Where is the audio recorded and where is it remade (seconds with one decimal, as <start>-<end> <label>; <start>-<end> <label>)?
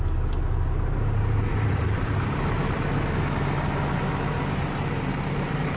0.0-1.5 recorded; 1.5-2.8 remade; 2.8-5.1 recorded; 5.1-5.8 remade